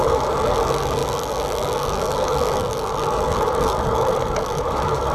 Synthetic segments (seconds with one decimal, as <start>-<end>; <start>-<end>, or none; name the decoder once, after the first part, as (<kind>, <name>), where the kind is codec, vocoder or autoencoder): 0.0-5.1 (codec, DAC)